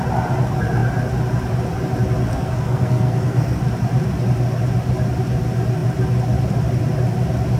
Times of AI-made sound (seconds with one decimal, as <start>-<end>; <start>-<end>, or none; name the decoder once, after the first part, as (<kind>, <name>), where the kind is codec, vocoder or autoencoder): 2.3-3.6 (codec, SNAC)